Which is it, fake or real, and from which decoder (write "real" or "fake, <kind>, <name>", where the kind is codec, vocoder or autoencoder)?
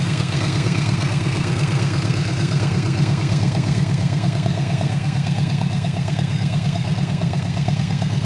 fake, codec, SNAC